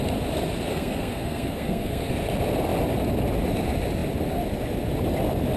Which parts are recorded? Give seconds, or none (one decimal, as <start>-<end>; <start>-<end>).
0.0-0.7; 2.1-5.6